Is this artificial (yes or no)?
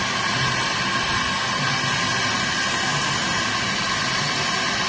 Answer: no